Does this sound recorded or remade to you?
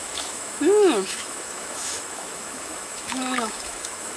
remade